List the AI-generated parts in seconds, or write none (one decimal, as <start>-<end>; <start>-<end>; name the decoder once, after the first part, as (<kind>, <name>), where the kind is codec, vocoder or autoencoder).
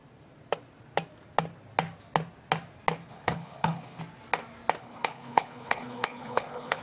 3.1-4.0 (codec, HILCodec); 4.8-6.8